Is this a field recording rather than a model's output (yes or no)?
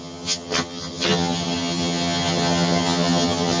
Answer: no